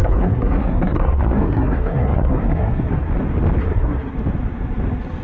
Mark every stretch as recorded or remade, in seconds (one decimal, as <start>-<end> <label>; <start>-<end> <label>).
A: 0.0-3.1 remade; 3.1-3.6 recorded; 3.6-4.1 remade; 4.1-5.2 recorded

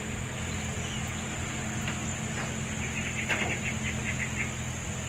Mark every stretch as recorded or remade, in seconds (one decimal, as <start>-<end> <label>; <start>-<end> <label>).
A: 0.0-5.1 recorded

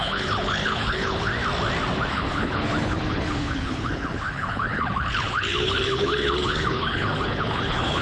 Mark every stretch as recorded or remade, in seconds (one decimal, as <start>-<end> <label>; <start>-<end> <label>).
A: 0.0-1.3 remade; 1.3-2.1 recorded; 2.1-8.0 remade

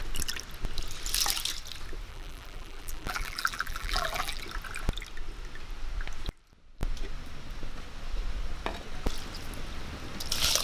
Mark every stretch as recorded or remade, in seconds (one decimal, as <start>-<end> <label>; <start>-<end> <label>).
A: 0.0-2.1 recorded; 2.1-4.4 remade; 4.4-10.6 recorded

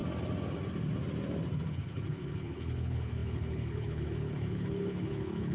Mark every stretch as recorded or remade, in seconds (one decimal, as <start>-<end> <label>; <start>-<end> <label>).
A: 0.0-1.7 recorded; 1.7-5.5 remade